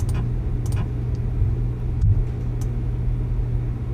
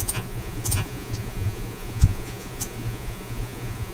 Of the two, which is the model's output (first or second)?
second